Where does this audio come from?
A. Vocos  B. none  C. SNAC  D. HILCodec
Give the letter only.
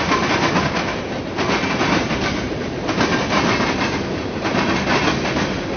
B